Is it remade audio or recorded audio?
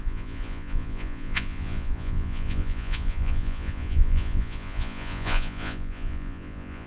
remade